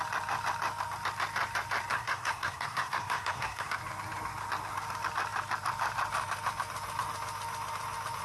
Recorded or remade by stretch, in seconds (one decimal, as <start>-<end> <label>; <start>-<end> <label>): 0.0-1.9 recorded; 1.9-3.8 remade; 3.8-8.2 recorded

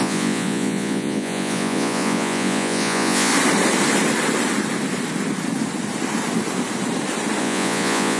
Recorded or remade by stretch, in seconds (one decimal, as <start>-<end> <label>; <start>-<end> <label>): 0.0-3.3 remade; 3.3-7.4 recorded; 7.4-8.2 remade

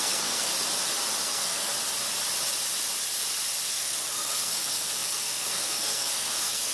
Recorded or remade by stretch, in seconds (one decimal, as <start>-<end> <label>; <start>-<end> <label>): 0.0-0.5 remade; 0.5-1.2 recorded; 1.2-1.7 remade; 1.7-3.7 recorded; 3.7-6.7 remade

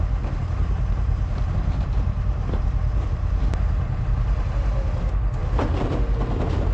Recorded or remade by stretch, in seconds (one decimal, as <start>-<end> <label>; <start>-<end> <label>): 0.0-0.4 recorded; 0.4-4.4 remade; 4.4-5.4 recorded; 5.4-6.0 remade; 6.0-6.7 recorded

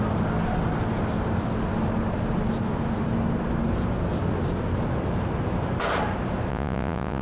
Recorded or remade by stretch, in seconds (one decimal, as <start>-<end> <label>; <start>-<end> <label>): 0.0-6.5 recorded; 6.5-7.2 remade

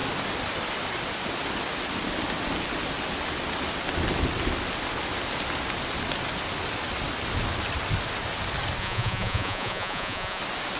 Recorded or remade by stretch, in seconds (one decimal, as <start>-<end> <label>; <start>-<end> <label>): 0.0-8.8 recorded; 8.8-10.4 remade; 10.4-10.8 recorded

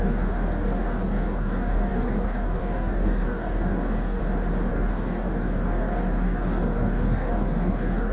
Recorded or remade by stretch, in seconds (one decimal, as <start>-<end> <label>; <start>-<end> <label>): 0.0-4.2 remade; 4.2-4.7 recorded; 4.7-8.1 remade